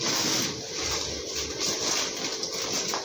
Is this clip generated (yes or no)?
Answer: no